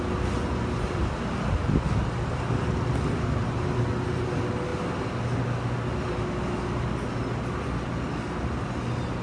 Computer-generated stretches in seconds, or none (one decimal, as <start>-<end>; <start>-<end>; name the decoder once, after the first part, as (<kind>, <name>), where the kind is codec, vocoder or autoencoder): none